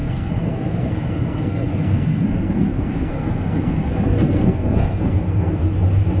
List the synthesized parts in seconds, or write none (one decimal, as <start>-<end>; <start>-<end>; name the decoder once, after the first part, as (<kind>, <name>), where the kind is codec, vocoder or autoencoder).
0.0-5.6 (codec, SNAC)